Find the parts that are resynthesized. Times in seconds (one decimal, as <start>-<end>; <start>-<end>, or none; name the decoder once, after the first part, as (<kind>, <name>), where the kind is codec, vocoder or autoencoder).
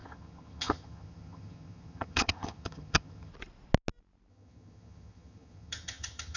0.0-3.3 (vocoder, HiFi-GAN); 4.3-6.4